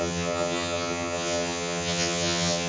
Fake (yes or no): yes